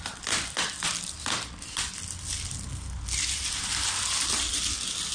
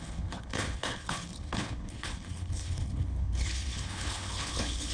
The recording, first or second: first